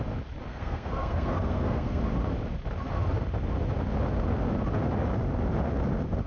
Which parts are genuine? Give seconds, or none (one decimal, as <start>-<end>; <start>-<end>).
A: 0.0-0.5; 2.0-6.3